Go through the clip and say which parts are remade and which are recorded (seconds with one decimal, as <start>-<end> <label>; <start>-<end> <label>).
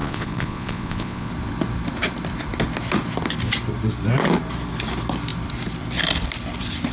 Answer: 0.0-1.3 remade; 1.3-6.9 recorded